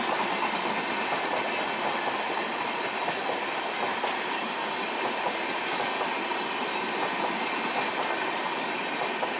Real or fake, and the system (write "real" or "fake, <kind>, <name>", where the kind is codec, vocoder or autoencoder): real